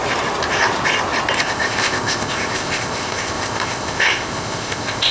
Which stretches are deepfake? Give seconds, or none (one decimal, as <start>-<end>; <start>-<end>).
1.4-5.1